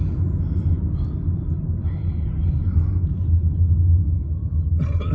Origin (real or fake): real